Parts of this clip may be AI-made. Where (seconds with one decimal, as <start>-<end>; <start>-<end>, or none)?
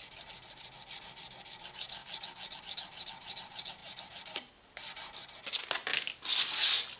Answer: 3.8-4.5